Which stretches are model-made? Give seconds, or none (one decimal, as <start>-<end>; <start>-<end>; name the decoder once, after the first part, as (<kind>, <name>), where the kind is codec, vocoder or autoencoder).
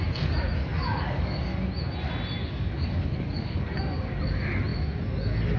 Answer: 0.6-1.6 (codec, DAC); 2.4-4.2